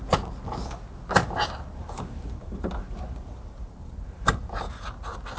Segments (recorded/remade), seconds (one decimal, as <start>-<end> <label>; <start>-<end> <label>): 0.0-1.2 recorded; 1.2-4.4 remade; 4.4-5.4 recorded